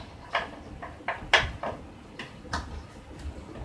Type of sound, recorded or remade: recorded